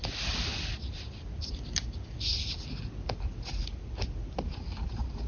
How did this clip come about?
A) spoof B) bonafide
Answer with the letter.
B